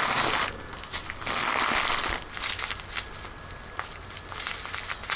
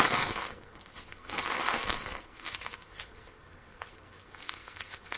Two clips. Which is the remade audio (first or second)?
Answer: second